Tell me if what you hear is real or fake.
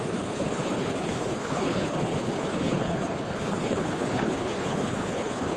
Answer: fake